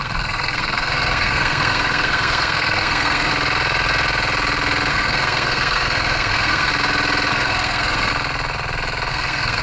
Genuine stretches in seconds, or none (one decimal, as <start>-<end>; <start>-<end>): 3.3-4.9; 6.7-7.3; 8.1-9.1